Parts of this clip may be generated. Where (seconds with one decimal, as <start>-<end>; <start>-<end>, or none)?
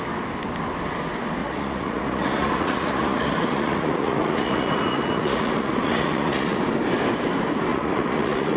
1.4-6.6; 7.7-8.6